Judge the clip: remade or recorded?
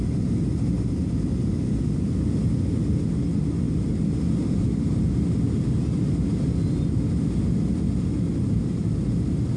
recorded